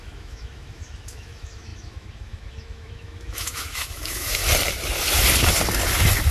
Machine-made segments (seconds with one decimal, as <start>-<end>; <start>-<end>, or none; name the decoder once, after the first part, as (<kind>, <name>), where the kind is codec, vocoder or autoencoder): 0.0-4.4 (autoencoder, DAC-VAE)